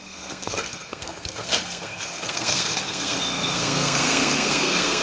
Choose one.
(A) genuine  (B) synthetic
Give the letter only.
B